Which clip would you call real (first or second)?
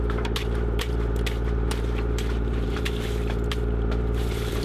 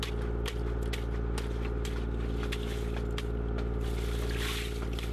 second